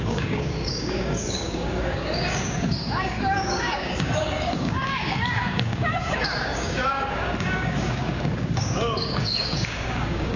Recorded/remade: remade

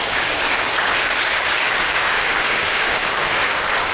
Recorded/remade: remade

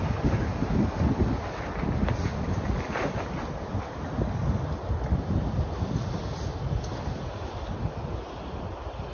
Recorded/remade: recorded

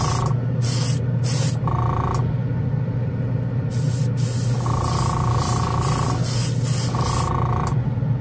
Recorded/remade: recorded